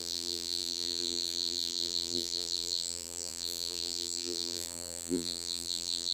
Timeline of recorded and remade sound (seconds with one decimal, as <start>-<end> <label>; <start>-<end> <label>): 0.0-6.1 remade